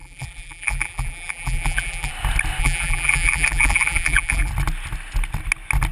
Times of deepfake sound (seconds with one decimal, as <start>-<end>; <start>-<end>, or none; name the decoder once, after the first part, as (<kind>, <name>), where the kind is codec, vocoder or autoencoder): 0.0-2.1 (vocoder, BigVGAN v2); 2.6-4.5